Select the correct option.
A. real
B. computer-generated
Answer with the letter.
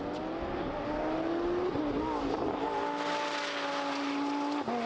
A